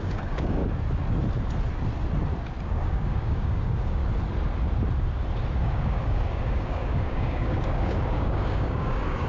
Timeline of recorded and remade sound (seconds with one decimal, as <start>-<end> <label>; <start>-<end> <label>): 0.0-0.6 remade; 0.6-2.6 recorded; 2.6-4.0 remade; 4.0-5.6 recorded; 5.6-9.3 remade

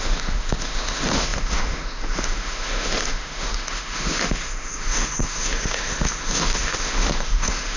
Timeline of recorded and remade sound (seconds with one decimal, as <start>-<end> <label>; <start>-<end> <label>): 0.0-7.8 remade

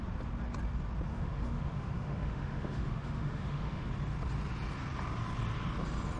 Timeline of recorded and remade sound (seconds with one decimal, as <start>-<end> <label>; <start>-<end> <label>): 0.0-1.1 recorded; 1.1-3.9 remade; 3.9-6.2 recorded